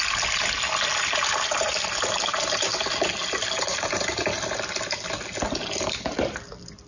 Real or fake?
real